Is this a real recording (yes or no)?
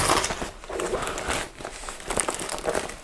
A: yes